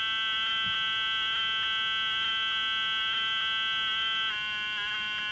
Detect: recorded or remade recorded